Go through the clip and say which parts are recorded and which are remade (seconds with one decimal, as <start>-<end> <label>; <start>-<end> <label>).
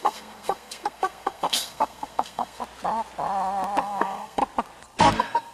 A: 0.0-2.6 remade; 2.6-3.8 recorded; 3.8-4.4 remade; 4.4-5.1 recorded; 5.1-5.5 remade